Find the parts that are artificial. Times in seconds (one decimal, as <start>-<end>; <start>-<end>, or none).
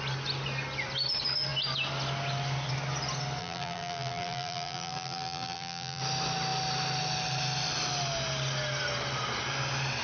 3.4-6.0